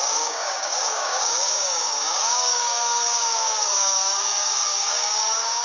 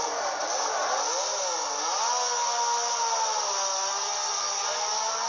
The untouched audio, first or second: second